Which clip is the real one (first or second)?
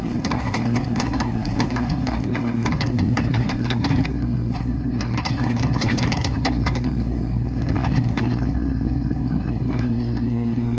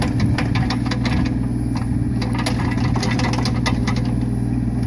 second